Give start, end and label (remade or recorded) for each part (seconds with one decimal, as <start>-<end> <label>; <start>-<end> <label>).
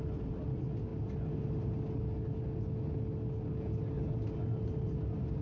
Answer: 0.0-5.4 recorded